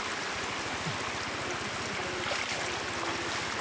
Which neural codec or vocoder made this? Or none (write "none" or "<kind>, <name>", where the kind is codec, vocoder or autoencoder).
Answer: none